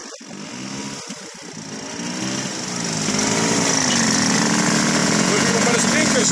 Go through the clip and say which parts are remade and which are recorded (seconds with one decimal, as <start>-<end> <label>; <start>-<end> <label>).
0.0-5.0 recorded; 5.0-6.3 remade